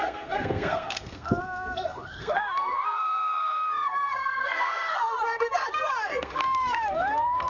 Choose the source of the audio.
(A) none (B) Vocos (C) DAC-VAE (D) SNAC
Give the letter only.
D